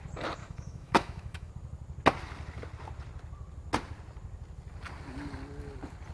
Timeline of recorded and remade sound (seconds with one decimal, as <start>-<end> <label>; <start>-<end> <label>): 0.0-0.4 recorded; 0.4-1.5 remade; 1.5-6.1 recorded